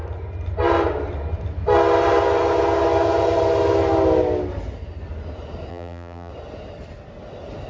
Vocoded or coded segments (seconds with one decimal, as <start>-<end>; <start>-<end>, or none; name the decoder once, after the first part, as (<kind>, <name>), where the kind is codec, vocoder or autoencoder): 5.7-6.3 (vocoder, BigVGAN v2)